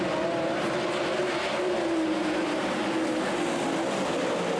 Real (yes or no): yes